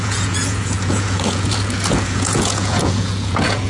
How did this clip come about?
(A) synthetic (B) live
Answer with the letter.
A